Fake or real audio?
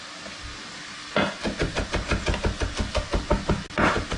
real